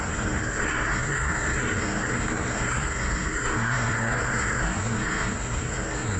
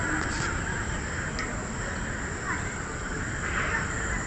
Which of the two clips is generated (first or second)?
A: first